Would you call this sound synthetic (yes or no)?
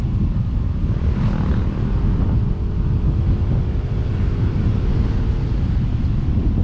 no